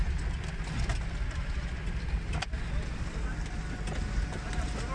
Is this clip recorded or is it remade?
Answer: recorded